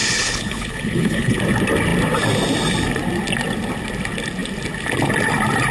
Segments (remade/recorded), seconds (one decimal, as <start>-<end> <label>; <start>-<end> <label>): 0.0-1.4 remade; 1.4-5.7 recorded